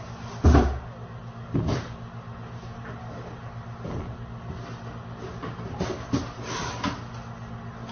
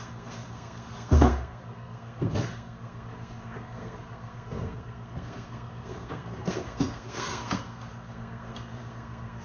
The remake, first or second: second